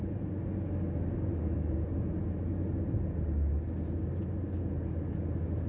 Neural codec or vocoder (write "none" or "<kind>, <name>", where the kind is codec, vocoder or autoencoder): none